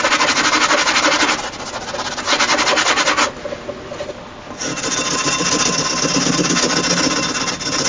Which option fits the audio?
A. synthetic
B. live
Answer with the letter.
B